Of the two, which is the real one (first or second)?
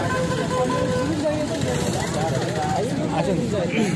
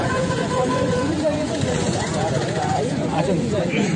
first